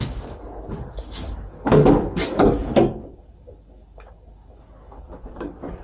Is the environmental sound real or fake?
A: fake